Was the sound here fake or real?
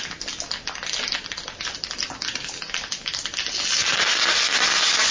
real